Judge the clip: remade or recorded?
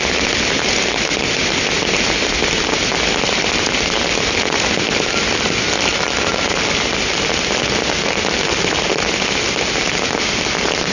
recorded